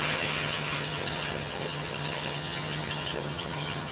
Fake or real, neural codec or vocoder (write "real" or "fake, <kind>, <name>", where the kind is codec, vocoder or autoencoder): fake, vocoder, HiFi-GAN